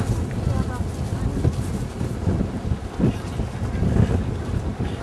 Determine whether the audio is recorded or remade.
recorded